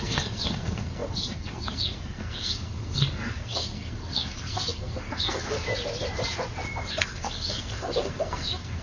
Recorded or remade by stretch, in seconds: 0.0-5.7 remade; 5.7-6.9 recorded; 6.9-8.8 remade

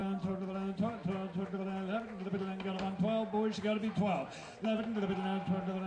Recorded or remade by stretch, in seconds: 0.0-5.9 recorded

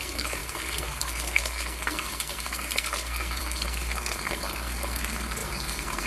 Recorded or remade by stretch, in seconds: 0.0-6.1 remade

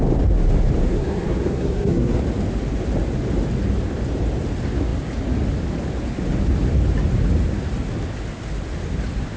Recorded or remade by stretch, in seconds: 0.0-0.8 recorded; 0.8-2.2 remade; 2.2-9.4 recorded

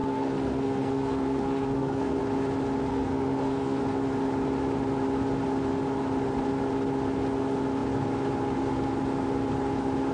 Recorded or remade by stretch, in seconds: 0.0-2.2 remade; 2.2-2.9 recorded; 2.9-3.8 remade; 3.8-10.1 recorded

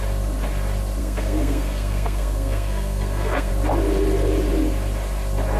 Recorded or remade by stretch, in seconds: 0.0-1.0 recorded; 1.0-3.5 remade; 3.5-5.6 recorded